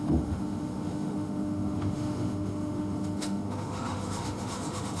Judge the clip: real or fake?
fake